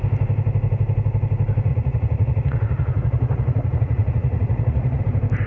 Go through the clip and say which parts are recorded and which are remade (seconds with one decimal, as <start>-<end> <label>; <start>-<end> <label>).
0.0-1.7 recorded; 1.7-5.0 remade; 5.0-5.5 recorded